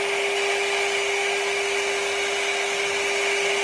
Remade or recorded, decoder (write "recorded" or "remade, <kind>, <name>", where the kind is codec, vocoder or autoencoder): recorded